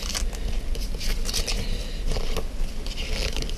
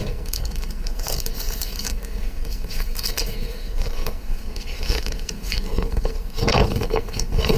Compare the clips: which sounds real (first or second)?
first